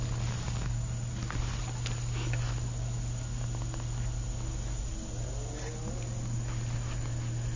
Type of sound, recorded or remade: recorded